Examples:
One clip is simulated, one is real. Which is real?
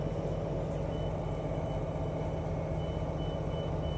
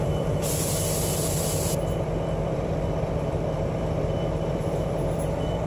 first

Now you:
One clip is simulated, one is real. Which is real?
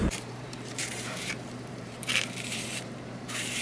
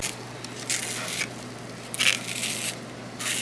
second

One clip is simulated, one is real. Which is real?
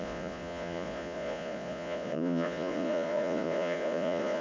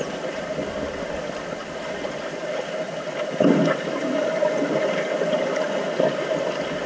second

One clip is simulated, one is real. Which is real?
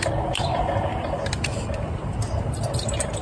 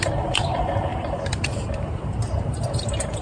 first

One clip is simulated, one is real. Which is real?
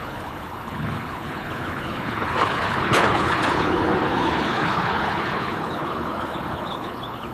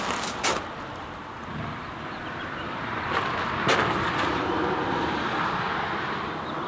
second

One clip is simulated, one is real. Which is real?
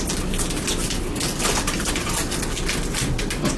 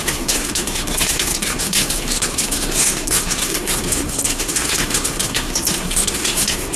first